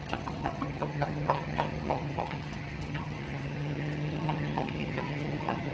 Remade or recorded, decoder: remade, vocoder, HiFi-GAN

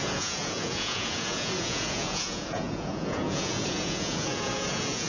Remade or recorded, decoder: remade, vocoder, Vocos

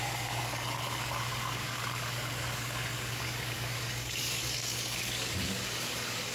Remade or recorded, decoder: remade, codec, DAC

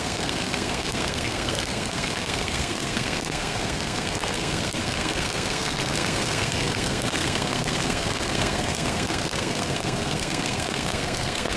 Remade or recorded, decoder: remade, codec, SNAC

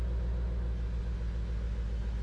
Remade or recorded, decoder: recorded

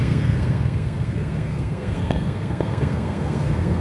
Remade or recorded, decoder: remade, codec, SNAC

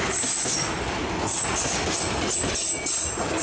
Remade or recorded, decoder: recorded